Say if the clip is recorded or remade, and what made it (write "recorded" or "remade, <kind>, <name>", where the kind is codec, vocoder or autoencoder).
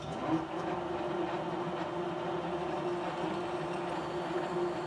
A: recorded